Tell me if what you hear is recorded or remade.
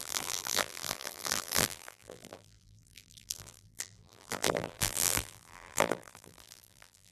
remade